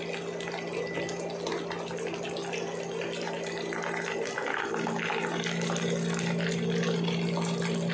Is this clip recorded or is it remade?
recorded